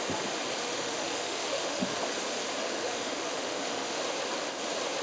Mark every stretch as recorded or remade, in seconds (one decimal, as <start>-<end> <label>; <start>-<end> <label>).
0.0-0.6 recorded; 0.6-2.0 remade; 2.0-2.8 recorded; 2.8-4.0 remade; 4.0-5.0 recorded